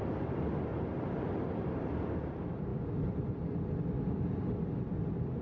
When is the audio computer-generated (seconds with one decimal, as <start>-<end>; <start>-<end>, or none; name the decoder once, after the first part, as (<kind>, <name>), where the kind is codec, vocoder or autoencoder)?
none